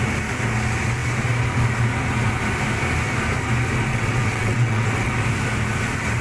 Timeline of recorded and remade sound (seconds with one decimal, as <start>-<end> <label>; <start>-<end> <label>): 0.0-3.9 recorded; 3.9-5.1 remade; 5.1-6.2 recorded